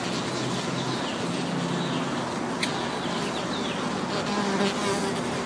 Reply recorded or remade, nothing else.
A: recorded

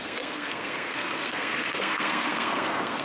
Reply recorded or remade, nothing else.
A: remade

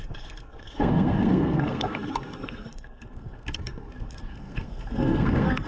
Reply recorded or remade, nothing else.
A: remade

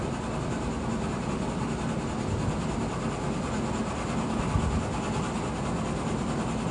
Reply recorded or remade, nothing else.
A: recorded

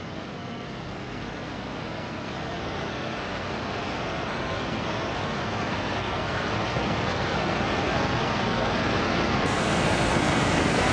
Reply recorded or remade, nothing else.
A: remade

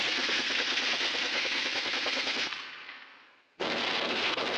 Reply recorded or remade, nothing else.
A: remade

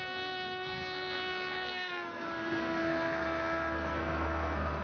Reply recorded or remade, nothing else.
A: remade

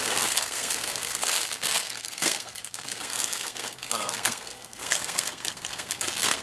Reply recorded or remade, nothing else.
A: remade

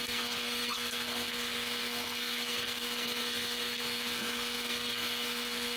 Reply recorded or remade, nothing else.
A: remade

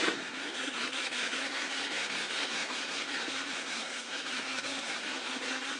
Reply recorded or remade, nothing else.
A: remade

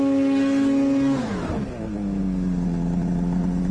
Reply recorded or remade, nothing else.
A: recorded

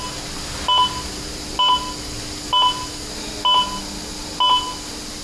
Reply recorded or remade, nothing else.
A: recorded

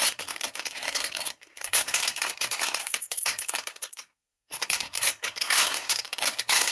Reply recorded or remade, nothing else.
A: remade